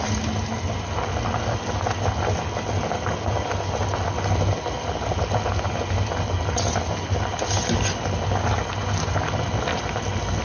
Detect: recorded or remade recorded